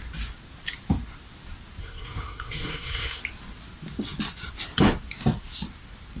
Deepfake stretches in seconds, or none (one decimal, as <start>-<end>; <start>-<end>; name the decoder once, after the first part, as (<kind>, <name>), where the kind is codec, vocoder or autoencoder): 1.8-3.2 (codec, SNAC)